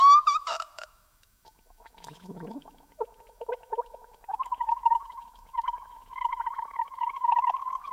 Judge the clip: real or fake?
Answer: fake